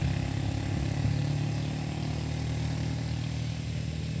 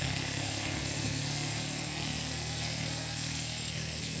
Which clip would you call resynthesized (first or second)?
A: second